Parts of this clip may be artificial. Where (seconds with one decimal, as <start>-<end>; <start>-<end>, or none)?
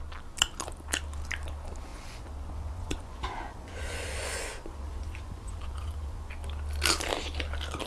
1.9-6.3